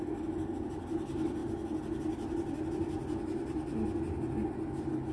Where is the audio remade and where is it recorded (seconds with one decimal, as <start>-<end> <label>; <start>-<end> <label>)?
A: 0.0-5.1 recorded